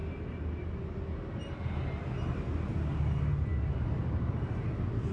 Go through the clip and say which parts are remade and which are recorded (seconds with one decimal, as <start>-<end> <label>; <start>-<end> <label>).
0.0-5.1 recorded